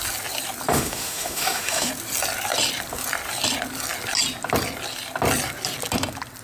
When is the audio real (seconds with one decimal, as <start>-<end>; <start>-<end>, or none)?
0.0-0.7; 1.9-6.4